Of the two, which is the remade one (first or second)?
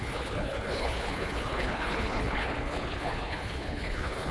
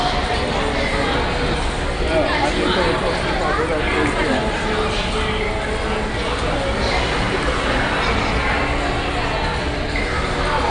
first